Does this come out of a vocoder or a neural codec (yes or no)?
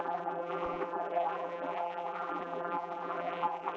yes